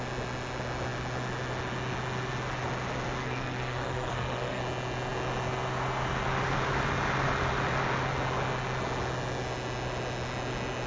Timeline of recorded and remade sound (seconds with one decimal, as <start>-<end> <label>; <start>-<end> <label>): 0.0-3.2 recorded; 3.2-4.6 remade; 4.6-10.9 recorded